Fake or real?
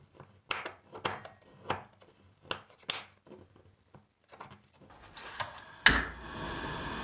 real